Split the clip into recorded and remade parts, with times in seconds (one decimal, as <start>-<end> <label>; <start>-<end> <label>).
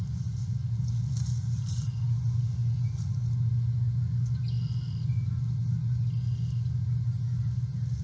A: 0.0-8.0 recorded